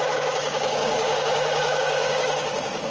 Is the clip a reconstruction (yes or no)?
yes